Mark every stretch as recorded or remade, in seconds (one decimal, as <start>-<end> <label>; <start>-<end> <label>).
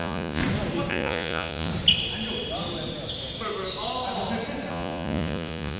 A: 0.0-0.4 remade; 0.4-0.9 recorded; 0.9-1.7 remade; 1.7-4.7 recorded; 4.7-5.8 remade